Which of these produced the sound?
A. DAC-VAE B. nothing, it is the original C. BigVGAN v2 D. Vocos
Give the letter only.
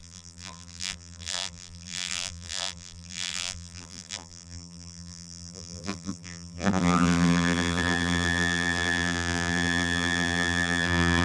C